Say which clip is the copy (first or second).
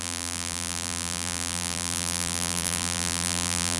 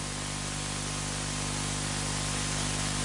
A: first